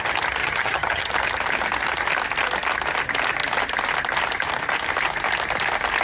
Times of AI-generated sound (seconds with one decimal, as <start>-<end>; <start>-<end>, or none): 0.4-1.1